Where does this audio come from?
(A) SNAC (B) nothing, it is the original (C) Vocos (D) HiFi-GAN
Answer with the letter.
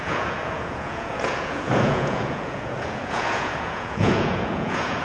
C